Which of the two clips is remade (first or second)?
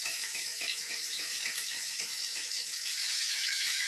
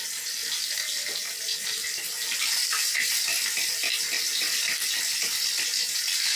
first